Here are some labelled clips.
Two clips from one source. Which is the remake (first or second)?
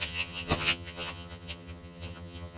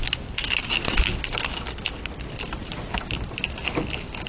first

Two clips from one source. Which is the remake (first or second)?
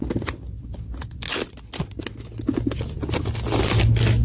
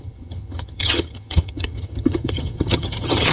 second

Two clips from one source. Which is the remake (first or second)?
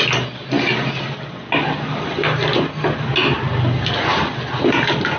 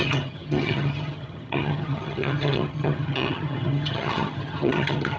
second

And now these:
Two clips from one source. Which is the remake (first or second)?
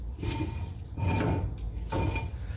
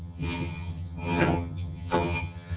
second